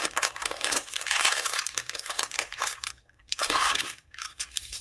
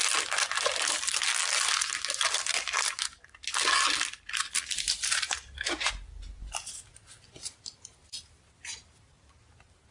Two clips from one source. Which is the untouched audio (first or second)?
second